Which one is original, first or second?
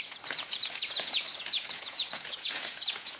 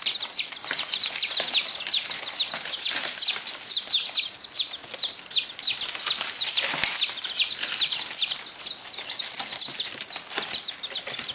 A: second